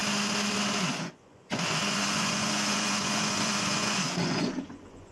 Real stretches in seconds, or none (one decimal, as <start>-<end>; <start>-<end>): 0.0-0.9